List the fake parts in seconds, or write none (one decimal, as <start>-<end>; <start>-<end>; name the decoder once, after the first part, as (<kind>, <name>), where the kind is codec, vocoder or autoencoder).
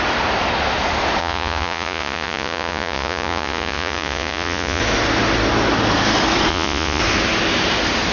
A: 1.2-4.8 (vocoder, Vocos); 6.5-7.0